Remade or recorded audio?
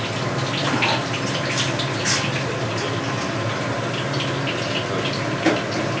recorded